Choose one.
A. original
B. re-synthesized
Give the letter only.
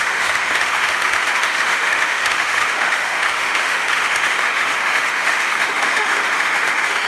B